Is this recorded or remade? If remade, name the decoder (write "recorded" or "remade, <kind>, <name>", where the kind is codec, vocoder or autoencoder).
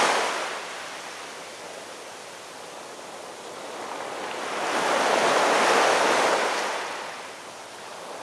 recorded